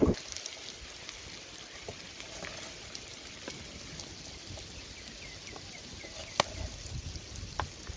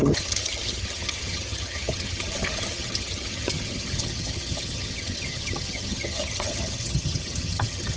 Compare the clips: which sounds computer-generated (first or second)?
second